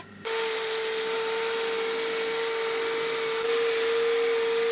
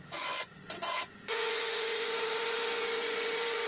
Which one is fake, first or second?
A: second